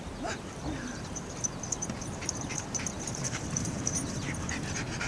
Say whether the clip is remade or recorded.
remade